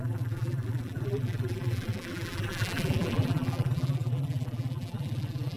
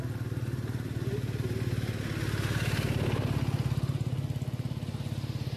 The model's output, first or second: first